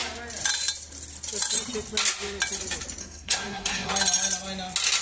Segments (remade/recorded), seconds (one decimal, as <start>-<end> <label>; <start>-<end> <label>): 0.0-3.0 recorded; 3.0-3.9 remade; 3.9-5.0 recorded

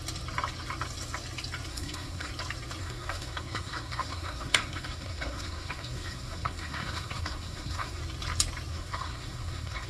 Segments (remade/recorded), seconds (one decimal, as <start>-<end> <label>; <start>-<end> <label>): 0.0-1.7 recorded; 1.7-2.3 remade; 2.3-2.8 recorded; 2.8-8.0 remade; 8.0-8.7 recorded; 8.7-9.9 remade

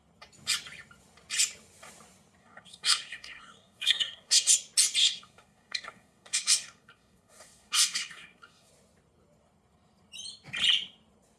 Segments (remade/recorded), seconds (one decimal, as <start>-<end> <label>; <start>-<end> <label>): 0.0-2.4 recorded; 2.4-4.5 remade; 4.5-5.0 recorded; 5.0-8.7 remade; 8.7-11.4 recorded

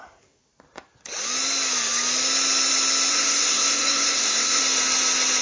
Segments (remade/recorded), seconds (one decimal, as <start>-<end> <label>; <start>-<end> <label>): 0.0-3.1 recorded; 3.1-4.6 remade; 4.6-5.4 recorded